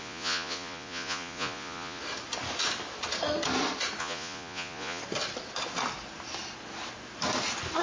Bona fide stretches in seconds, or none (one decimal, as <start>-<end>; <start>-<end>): 2.0-4.0; 5.0-7.8